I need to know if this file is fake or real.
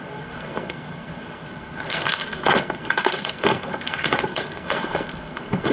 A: fake